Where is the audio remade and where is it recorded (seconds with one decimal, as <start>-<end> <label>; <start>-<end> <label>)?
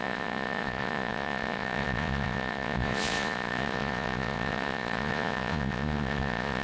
0.0-6.6 remade